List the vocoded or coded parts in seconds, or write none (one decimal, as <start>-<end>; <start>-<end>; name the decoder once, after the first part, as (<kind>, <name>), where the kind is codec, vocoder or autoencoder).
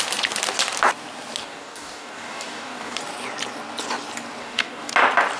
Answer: 1.4-3.0 (codec, DAC); 4.4-4.9